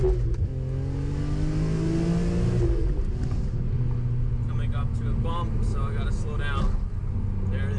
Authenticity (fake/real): real